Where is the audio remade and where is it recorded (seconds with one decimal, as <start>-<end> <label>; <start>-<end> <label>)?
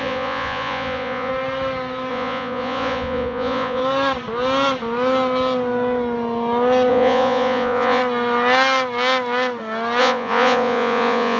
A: 0.0-1.3 remade; 1.3-2.1 recorded; 2.1-3.8 remade; 3.8-6.9 recorded; 6.9-8.0 remade; 8.0-10.0 recorded; 10.0-11.4 remade